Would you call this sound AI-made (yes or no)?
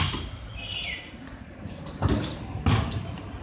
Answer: no